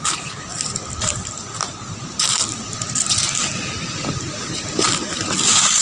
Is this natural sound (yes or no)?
yes